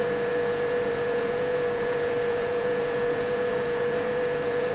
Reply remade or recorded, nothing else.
remade